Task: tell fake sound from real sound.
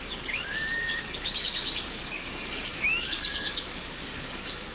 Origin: fake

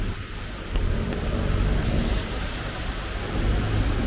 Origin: real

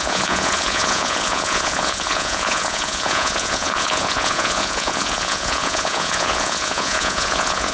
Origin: fake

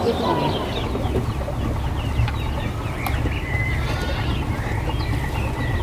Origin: real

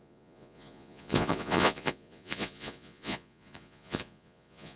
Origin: fake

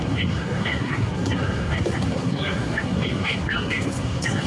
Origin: fake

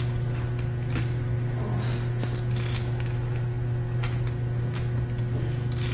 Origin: real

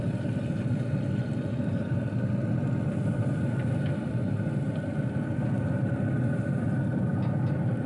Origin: real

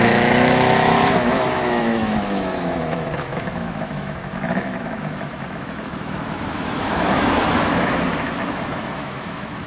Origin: fake